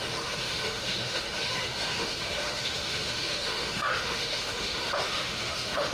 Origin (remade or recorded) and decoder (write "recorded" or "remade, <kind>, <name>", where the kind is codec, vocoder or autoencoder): remade, autoencoder, DAC-VAE